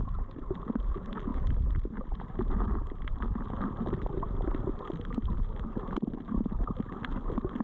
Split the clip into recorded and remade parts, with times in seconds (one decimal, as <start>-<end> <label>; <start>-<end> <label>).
0.0-7.6 recorded